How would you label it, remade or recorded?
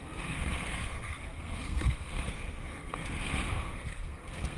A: remade